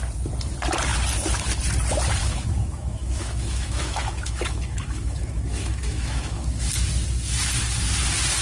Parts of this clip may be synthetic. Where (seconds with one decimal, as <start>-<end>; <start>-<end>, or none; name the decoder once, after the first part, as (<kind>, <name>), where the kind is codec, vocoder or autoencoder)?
2.2-6.7 (autoencoder, DAC-VAE)